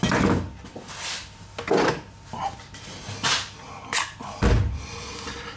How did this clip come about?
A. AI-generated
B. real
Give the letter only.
B